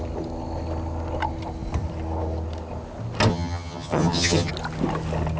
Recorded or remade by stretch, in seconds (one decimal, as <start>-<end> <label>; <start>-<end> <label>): 0.0-3.3 recorded; 3.3-4.5 remade; 4.5-5.4 recorded